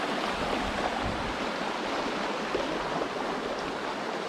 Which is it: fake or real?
real